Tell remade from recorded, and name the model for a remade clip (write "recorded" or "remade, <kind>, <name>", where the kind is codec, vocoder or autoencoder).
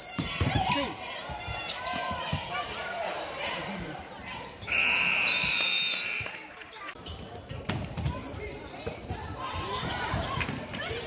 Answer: remade, vocoder, BigVGAN v2